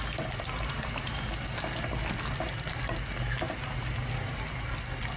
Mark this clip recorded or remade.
recorded